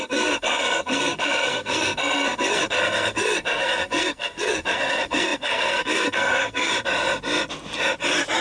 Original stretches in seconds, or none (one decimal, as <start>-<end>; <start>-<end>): 6.7-8.4

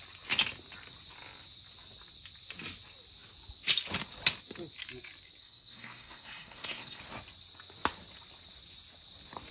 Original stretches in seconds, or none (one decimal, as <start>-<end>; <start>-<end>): 0.0-5.4; 7.0-9.5

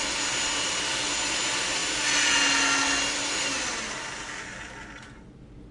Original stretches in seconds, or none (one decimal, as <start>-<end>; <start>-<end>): 0.0-5.7

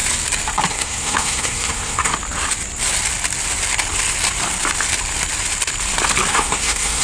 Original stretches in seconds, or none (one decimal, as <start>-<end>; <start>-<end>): 0.0-0.7; 2.1-6.3

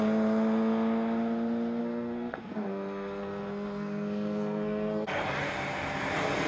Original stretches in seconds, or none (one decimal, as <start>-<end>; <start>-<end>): 0.0-1.8; 5.2-6.5

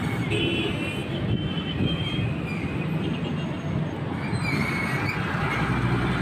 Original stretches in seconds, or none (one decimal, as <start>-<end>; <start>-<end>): 0.0-6.2

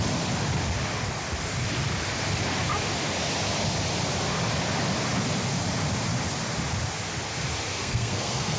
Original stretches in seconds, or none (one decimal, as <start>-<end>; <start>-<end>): 0.0-7.7

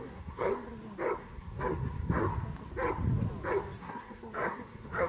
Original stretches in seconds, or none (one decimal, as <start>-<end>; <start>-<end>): 0.5-1.2; 2.3-3.8